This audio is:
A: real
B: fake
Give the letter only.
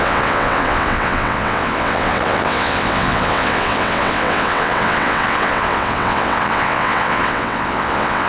B